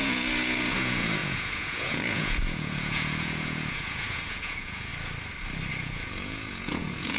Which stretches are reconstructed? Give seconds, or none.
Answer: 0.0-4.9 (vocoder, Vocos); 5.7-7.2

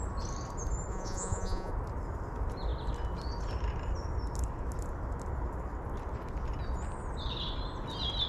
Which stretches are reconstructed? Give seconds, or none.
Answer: 0.9-1.7 (vocoder, Vocos)

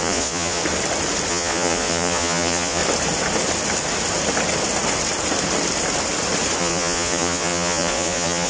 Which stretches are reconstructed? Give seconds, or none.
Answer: 0.0-0.6 (vocoder, Vocos); 1.3-2.8; 6.6-8.5

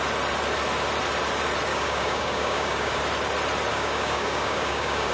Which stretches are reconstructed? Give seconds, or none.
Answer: 1.7-3.0 (codec, DAC); 3.7-5.1

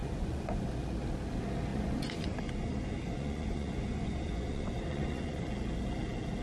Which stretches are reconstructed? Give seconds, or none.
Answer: 0.0-0.7 (vocoder, Vocos); 1.7-5.5